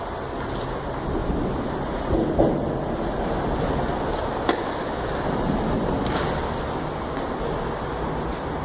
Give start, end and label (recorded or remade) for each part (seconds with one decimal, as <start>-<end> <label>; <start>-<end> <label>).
0.0-8.6 recorded